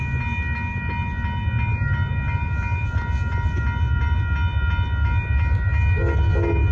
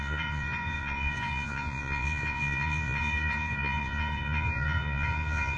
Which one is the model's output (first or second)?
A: second